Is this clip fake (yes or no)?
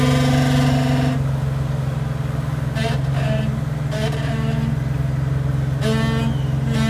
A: no